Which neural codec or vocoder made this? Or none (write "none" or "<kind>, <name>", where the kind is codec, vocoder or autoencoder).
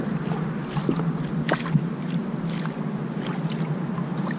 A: none